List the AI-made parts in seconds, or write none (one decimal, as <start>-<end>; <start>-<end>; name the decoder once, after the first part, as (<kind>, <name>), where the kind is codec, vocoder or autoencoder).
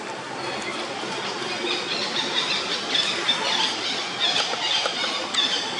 none